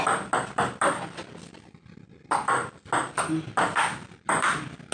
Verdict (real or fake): real